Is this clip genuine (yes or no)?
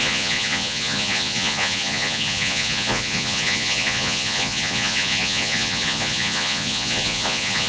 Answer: no